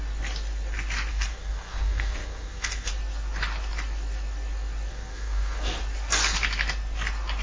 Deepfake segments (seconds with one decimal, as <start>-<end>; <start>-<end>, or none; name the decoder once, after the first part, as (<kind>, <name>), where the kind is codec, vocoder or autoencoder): 1.1-2.9 (codec, SNAC); 4.9-5.8